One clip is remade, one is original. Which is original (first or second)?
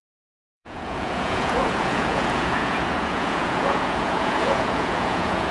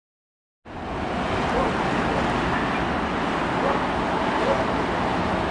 second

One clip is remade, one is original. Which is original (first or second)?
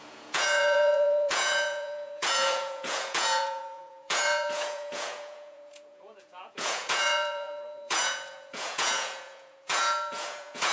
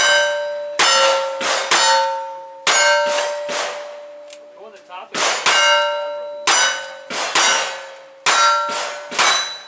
second